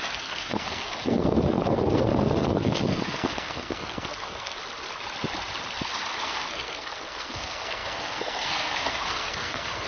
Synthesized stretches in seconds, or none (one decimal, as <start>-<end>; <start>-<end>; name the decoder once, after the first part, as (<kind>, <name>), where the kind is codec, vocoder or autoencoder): 0.0-4.6 (codec, SNAC); 6.2-9.9